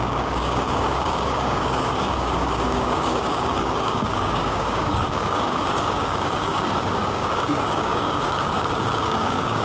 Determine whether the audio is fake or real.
fake